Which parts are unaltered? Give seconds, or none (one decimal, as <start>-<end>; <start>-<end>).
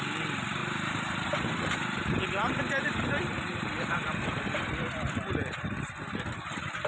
0.0-0.6; 4.7-6.9